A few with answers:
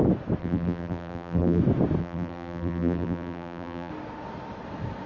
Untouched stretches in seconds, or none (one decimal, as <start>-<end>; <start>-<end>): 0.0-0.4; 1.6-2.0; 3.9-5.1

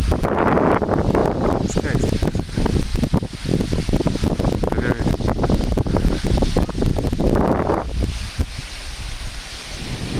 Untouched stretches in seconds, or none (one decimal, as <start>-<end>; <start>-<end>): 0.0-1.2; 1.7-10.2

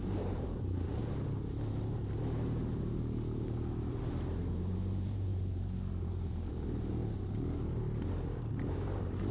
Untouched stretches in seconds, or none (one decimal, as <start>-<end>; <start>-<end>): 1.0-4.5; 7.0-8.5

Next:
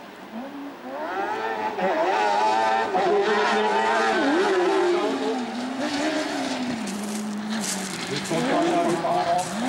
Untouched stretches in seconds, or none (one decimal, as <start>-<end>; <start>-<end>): 0.0-9.7